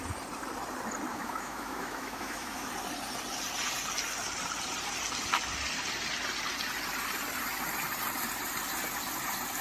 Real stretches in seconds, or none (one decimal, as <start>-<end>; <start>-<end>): 0.0-1.1; 2.7-9.6